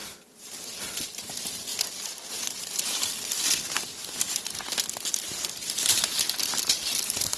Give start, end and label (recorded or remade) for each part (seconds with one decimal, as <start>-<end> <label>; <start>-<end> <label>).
0.0-0.7 remade; 0.7-7.4 recorded